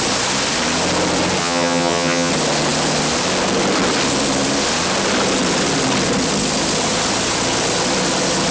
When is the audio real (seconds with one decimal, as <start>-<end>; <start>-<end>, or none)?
0.0-1.4; 2.3-8.5